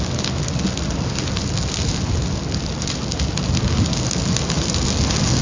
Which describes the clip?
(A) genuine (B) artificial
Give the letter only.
A